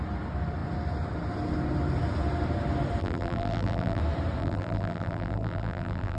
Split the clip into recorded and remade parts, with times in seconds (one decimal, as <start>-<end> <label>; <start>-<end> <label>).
0.0-3.0 recorded; 3.0-4.0 remade; 4.0-4.4 recorded; 4.4-6.2 remade